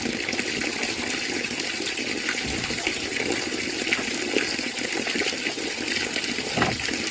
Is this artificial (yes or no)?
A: no